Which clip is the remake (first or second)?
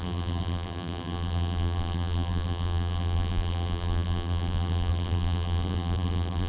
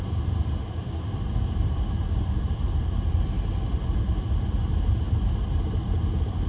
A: first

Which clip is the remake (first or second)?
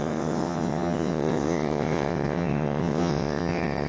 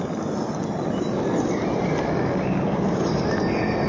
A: first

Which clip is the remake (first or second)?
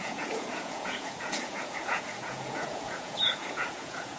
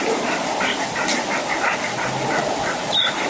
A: first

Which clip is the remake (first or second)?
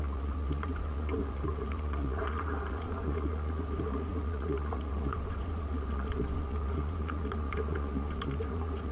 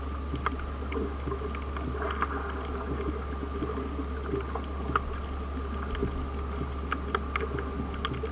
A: first